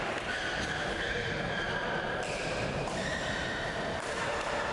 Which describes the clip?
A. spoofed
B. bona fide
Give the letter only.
A